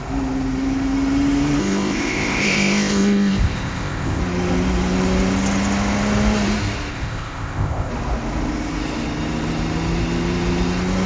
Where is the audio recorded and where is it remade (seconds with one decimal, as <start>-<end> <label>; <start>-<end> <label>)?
0.0-1.6 recorded; 1.6-4.2 remade; 4.2-6.9 recorded; 6.9-7.9 remade; 7.9-11.1 recorded